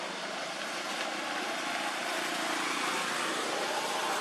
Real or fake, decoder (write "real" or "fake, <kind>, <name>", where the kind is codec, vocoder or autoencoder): real